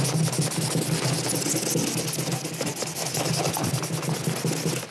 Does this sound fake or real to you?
real